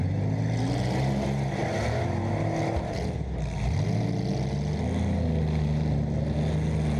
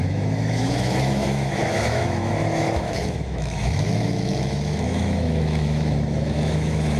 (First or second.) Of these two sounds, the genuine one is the first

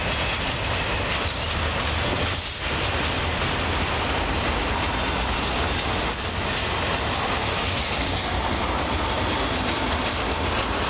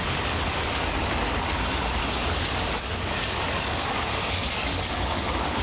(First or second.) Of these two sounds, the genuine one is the first